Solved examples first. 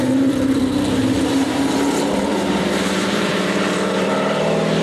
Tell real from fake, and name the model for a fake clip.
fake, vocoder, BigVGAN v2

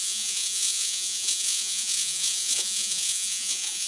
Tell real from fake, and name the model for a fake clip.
fake, vocoder, Vocos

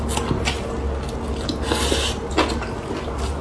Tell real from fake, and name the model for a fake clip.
real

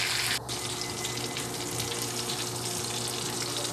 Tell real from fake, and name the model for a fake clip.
real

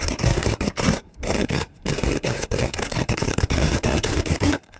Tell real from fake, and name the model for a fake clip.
fake, codec, SNAC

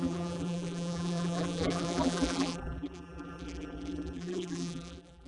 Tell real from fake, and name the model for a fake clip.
fake, vocoder, BigVGAN v2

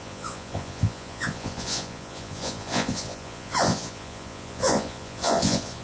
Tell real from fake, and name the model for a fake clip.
fake, vocoder, Vocos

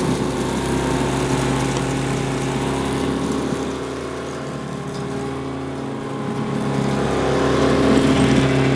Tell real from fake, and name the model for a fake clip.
real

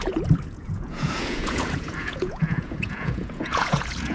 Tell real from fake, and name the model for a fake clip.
fake, vocoder, Vocos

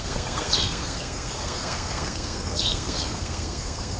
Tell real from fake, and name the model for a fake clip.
fake, codec, SNAC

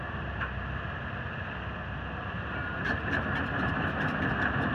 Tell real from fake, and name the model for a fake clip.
real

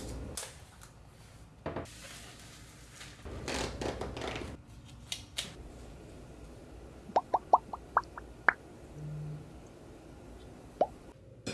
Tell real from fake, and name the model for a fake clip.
real